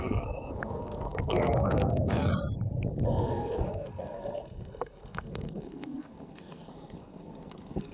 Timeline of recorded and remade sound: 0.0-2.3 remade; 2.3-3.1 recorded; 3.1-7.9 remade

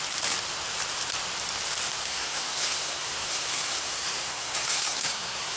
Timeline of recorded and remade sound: 0.0-2.0 recorded; 2.0-5.6 remade

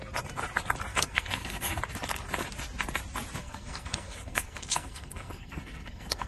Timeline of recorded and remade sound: 0.0-0.9 recorded; 0.9-1.8 remade; 1.8-3.4 recorded; 3.4-6.3 remade

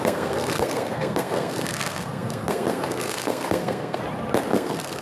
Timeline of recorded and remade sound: 0.0-4.0 remade; 4.0-4.5 recorded; 4.5-5.0 remade

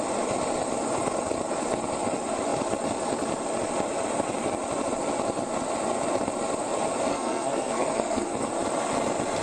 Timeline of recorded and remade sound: 0.0-7.1 recorded; 7.1-8.5 remade; 8.5-9.4 recorded